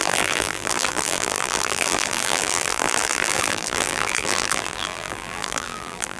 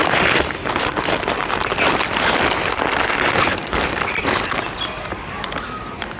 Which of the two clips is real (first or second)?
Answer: second